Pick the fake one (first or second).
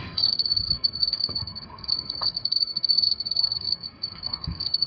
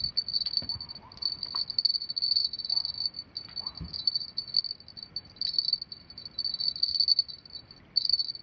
first